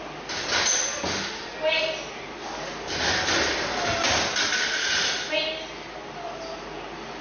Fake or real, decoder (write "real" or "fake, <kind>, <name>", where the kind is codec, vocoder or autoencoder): real